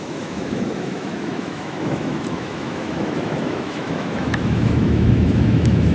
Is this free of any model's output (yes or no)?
no